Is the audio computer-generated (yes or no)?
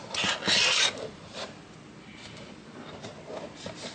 no